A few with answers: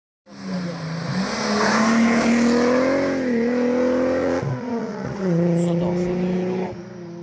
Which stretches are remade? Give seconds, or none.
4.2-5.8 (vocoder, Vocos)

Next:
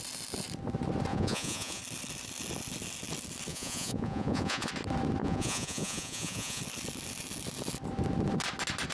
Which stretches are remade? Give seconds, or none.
1.1-1.8 (vocoder, Vocos); 3.5-4.7; 5.2-6.6

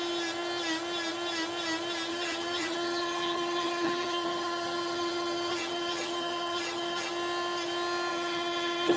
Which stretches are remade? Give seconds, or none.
2.1-7.1 (vocoder, HiFi-GAN); 8.1-9.0

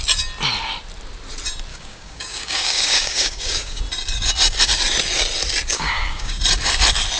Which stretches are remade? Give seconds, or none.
1.7-3.8 (codec, DAC); 5.7-6.4